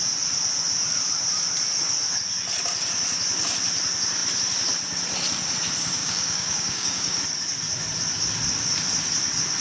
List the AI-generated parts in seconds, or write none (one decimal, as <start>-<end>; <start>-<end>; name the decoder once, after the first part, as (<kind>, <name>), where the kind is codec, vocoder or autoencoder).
6.0-7.2 (codec, DAC)